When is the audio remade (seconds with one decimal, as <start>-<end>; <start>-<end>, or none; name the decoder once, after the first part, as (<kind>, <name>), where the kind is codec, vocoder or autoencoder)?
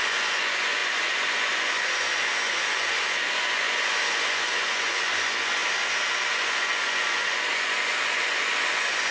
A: 0.0-5.6 (vocoder, Vocos); 6.1-9.1